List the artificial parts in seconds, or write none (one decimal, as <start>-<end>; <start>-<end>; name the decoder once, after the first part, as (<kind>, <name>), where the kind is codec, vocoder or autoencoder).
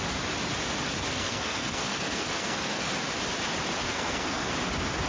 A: 1.1-2.9 (codec, SNAC); 3.9-4.5